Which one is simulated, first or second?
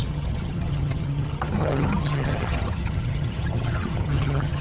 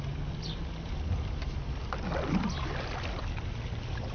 first